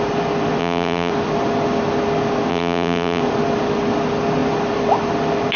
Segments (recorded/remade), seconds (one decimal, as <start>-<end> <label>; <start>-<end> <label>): 0.0-0.6 recorded; 0.6-1.1 remade; 1.1-2.5 recorded; 2.5-3.2 remade; 3.2-5.6 recorded